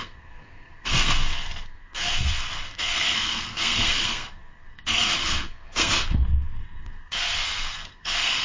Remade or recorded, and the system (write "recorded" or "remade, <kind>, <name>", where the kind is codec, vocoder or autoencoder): remade, codec, SNAC